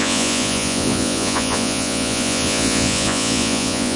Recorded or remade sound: remade